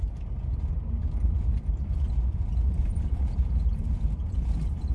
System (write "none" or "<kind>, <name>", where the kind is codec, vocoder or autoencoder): vocoder, BigVGAN v2